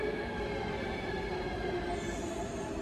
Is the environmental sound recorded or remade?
recorded